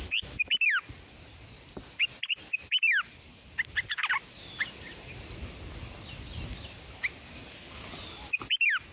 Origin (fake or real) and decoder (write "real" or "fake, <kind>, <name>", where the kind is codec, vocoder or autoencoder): real